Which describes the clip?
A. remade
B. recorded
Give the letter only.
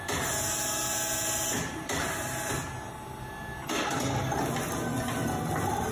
B